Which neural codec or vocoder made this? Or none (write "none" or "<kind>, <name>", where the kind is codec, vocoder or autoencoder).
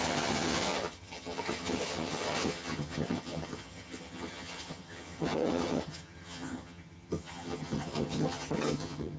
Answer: vocoder, HiFi-GAN